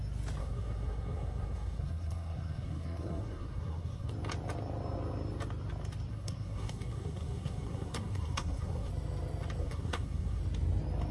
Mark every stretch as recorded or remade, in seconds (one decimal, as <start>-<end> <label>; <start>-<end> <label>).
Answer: 0.0-0.4 recorded; 0.4-4.1 remade; 4.1-6.1 recorded; 6.1-8.9 remade; 8.9-9.6 recorded; 9.6-10.4 remade; 10.4-11.1 recorded